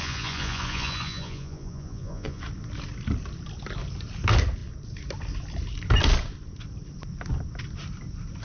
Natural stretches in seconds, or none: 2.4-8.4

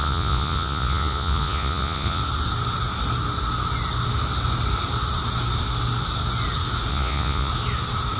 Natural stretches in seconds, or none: 2.2-6.9; 7.5-8.2

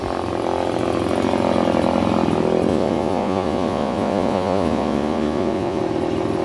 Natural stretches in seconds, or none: 0.0-2.7; 5.8-6.4

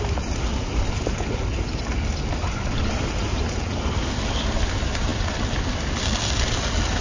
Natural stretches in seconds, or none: 0.0-7.0

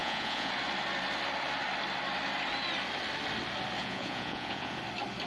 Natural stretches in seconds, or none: 0.5-3.8; 4.8-5.3

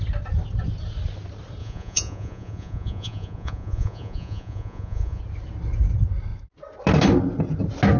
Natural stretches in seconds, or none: 0.0-1.6; 5.2-8.0

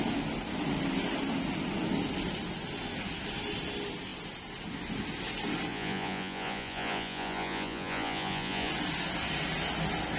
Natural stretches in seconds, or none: 0.0-5.7; 8.7-10.2